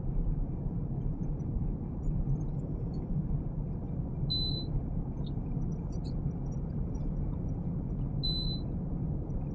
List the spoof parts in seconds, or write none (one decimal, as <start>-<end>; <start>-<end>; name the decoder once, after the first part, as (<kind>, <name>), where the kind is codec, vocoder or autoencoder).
2.5-3.2 (codec, DAC)